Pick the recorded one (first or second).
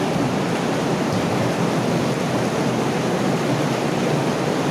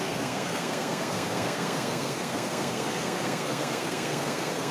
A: first